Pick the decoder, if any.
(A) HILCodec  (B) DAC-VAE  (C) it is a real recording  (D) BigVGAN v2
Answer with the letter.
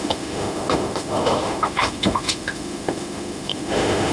B